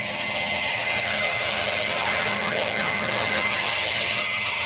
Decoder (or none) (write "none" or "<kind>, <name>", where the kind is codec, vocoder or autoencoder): vocoder, HiFi-GAN